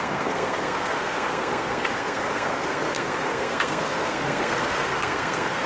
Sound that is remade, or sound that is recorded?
remade